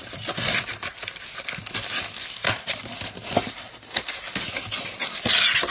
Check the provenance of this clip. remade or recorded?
recorded